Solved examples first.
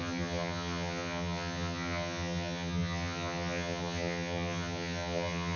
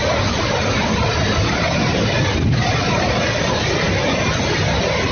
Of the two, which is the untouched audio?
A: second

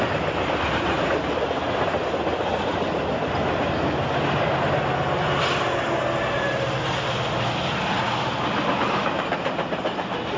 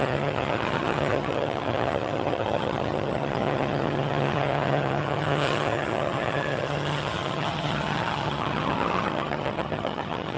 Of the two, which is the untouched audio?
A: first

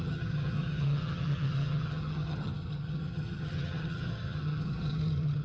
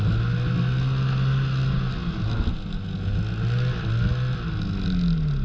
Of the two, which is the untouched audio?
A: second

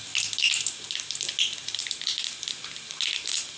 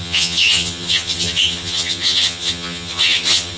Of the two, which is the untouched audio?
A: first